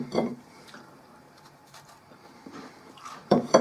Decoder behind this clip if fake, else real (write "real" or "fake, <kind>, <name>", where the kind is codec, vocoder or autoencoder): fake, vocoder, BigVGAN v2